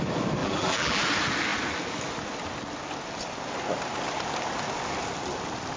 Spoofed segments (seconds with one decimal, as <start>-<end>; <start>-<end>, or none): 0.4-1.0